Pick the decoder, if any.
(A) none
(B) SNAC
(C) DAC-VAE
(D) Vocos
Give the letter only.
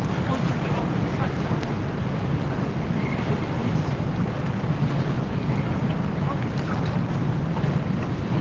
A